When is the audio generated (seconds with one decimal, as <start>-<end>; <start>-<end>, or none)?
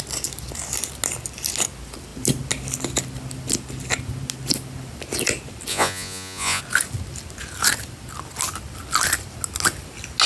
5.7-6.6